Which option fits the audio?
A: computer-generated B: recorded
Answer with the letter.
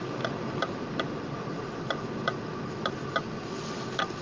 B